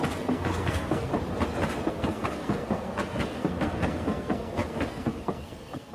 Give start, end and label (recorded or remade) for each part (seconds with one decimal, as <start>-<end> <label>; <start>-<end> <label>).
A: 0.0-1.1 remade; 1.1-1.9 recorded; 1.9-5.9 remade